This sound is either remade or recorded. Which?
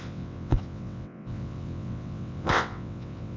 remade